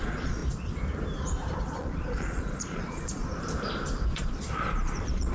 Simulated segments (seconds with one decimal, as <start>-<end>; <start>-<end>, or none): 0.0-0.4; 1.6-3.2; 4.1-5.3